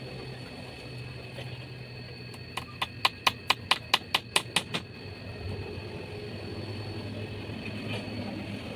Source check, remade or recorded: recorded